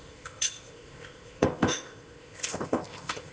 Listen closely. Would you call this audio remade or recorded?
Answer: remade